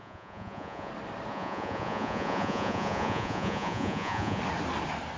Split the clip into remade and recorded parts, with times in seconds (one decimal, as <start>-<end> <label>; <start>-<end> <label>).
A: 0.0-0.9 remade; 0.9-1.3 recorded; 1.3-4.4 remade; 4.4-5.2 recorded

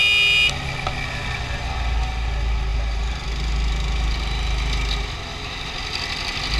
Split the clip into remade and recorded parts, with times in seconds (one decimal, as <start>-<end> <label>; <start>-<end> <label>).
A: 0.0-6.6 recorded

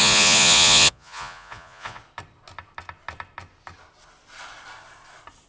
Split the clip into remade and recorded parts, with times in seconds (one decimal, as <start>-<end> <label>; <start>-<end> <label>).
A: 0.0-2.0 remade; 2.0-5.5 recorded

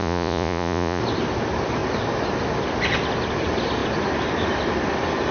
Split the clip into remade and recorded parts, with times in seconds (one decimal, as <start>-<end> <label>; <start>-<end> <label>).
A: 0.0-1.0 remade; 1.0-5.3 recorded

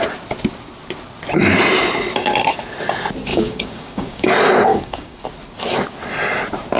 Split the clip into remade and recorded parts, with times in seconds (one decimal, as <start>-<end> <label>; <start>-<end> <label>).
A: 0.0-3.3 recorded; 3.3-4.3 remade; 4.3-4.7 recorded; 4.7-5.2 remade; 5.2-6.8 recorded

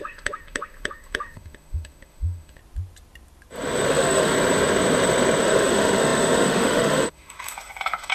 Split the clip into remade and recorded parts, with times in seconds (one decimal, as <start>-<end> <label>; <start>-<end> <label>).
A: 0.0-2.6 remade; 2.6-3.9 recorded; 3.9-4.3 remade; 4.3-5.4 recorded; 5.4-8.1 remade

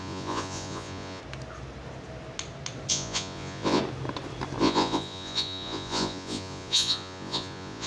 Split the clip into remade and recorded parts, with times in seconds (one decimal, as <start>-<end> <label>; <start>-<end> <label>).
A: 0.0-1.2 remade; 1.2-2.9 recorded; 2.9-3.8 remade; 3.8-4.6 recorded; 4.6-7.9 remade